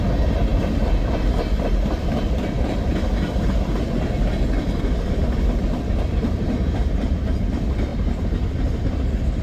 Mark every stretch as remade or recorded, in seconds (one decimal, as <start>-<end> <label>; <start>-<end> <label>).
0.0-9.4 remade